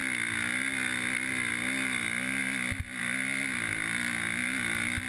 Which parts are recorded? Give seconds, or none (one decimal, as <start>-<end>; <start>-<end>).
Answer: 0.0-5.1